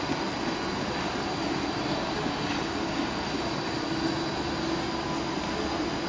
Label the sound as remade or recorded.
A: recorded